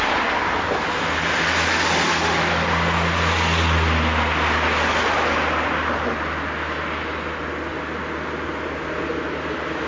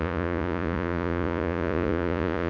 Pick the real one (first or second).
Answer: first